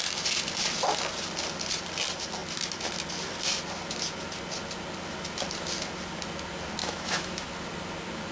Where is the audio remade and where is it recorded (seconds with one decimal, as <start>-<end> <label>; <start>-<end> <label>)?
0.0-6.8 recorded; 6.8-7.5 remade; 7.5-8.3 recorded